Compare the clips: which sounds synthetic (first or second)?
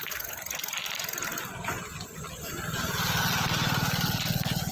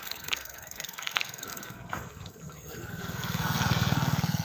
second